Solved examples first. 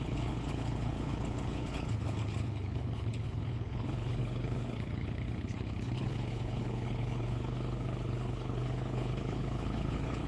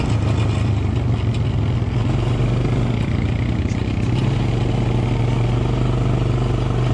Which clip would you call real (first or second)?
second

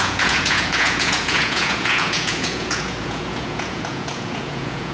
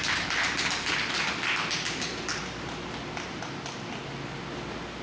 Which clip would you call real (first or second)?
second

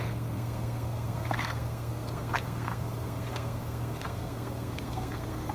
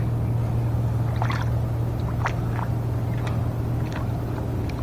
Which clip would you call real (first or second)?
second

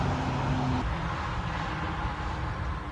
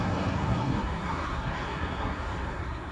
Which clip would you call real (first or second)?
first